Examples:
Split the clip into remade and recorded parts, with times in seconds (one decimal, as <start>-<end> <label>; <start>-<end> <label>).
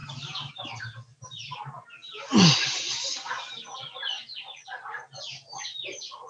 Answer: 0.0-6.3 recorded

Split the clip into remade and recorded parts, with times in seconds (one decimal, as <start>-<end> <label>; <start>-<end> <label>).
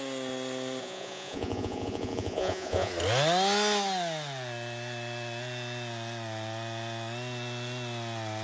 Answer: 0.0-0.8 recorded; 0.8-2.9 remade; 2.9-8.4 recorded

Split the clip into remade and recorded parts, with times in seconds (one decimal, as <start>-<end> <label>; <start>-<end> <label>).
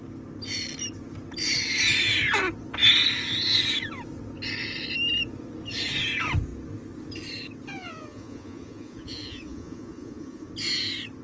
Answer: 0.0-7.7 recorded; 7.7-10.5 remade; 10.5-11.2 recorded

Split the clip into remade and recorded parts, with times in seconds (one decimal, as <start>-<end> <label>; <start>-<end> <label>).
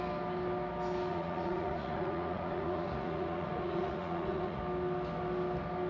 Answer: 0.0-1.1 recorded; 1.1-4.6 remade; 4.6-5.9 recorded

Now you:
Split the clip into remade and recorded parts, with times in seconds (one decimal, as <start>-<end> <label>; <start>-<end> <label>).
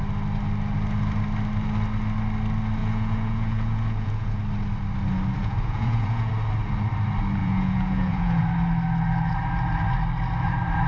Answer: 0.0-2.8 recorded; 2.8-4.4 remade; 4.4-5.4 recorded; 5.4-6.3 remade; 6.3-7.4 recorded; 7.4-8.4 remade; 8.4-10.9 recorded